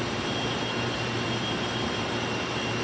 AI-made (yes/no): yes